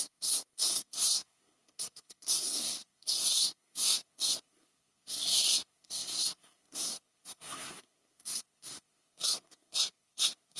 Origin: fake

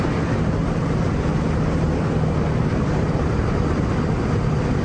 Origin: real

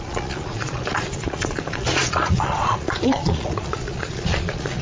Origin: fake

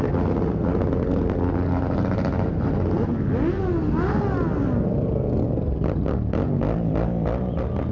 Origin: real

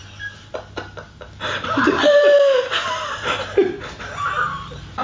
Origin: real